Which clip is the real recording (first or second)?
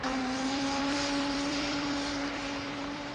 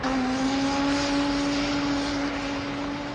second